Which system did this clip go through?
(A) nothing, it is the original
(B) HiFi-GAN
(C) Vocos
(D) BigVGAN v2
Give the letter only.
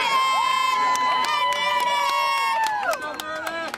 A